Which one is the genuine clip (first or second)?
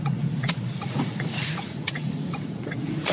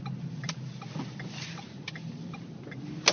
second